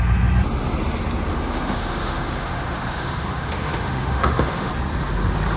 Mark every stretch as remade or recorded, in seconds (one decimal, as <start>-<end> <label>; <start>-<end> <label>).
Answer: 0.0-1.3 recorded; 1.3-4.7 remade; 4.7-5.6 recorded